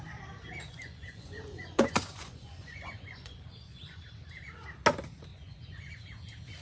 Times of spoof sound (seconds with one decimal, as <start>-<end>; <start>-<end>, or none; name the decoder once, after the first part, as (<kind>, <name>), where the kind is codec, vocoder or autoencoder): 0.6-4.0 (vocoder, Vocos); 5.3-5.9